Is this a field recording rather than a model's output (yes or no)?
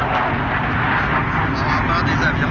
yes